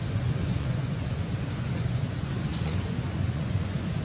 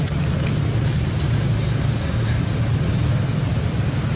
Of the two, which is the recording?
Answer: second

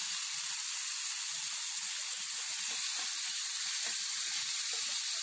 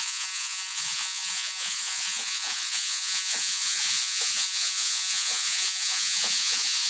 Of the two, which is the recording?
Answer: first